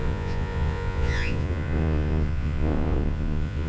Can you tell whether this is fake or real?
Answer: fake